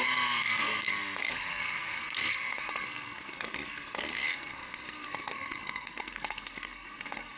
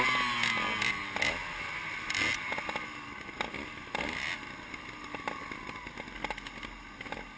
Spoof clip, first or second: first